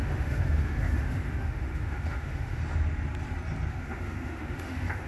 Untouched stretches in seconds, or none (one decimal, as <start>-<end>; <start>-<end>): 2.6-3.7